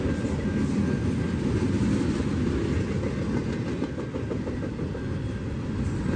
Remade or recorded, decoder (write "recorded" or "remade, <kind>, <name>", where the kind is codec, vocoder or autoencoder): recorded